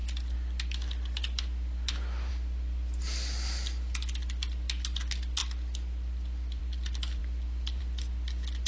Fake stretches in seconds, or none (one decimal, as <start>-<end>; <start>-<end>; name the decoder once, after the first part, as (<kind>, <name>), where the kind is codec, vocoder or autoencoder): none